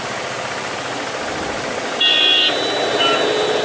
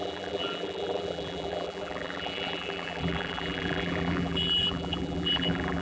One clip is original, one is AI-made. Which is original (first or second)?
first